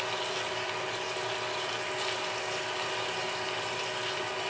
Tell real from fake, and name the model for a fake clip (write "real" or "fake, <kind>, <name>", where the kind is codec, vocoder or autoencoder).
real